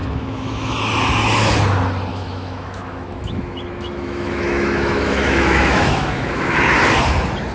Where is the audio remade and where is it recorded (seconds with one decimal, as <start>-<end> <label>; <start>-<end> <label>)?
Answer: 0.0-0.7 remade; 0.7-2.1 recorded; 2.1-6.6 remade; 6.6-7.5 recorded

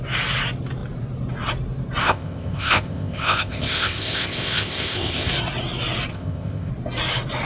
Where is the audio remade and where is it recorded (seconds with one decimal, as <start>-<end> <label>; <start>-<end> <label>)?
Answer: 0.0-2.0 recorded; 2.0-5.3 remade; 5.3-6.1 recorded; 6.1-6.7 remade; 6.7-7.5 recorded